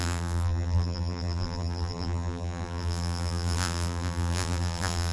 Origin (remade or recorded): remade